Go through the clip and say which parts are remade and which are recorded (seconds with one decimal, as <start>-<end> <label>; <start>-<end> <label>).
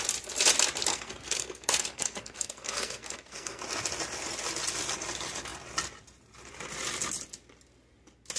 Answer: 0.0-0.9 recorded; 0.9-3.6 remade; 3.6-8.4 recorded